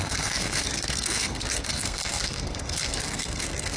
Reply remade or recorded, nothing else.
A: remade